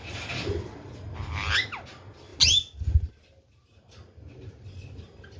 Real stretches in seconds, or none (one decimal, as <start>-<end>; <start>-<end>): 0.0-5.4